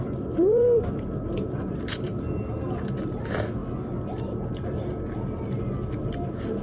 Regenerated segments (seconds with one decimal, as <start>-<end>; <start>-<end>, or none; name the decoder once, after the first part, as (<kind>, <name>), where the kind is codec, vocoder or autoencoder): 0.0-2.1 (vocoder, BigVGAN v2); 3.2-3.6; 6.0-6.6